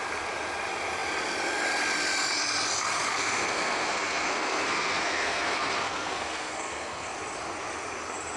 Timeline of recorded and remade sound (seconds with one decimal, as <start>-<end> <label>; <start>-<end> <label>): 0.0-3.1 recorded; 3.1-7.1 remade; 7.1-8.4 recorded